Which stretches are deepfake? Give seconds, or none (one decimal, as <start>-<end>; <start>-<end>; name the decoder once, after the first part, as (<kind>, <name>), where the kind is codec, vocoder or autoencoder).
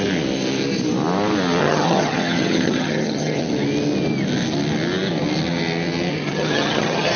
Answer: 1.6-3.4 (vocoder, HiFi-GAN); 6.1-7.2